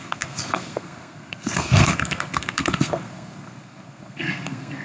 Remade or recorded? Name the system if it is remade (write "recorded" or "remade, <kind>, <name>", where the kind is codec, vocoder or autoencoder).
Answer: remade, codec, SNAC